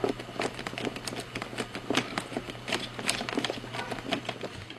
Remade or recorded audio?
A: recorded